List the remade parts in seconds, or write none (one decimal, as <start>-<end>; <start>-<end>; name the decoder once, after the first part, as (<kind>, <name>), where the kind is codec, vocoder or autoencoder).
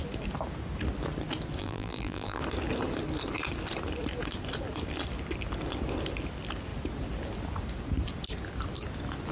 1.6-2.4 (vocoder, BigVGAN v2)